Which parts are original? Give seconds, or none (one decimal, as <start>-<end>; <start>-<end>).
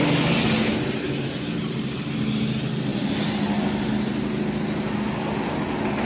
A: 0.0-6.1